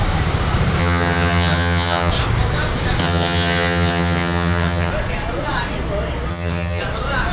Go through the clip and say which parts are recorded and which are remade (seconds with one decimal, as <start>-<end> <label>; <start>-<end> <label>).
0.0-0.8 recorded; 0.8-2.1 remade; 2.1-3.0 recorded; 3.0-4.9 remade; 4.9-6.3 recorded; 6.3-6.8 remade; 6.8-7.3 recorded